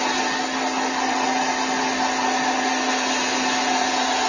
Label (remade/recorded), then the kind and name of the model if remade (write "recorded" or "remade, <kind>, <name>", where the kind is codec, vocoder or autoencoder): recorded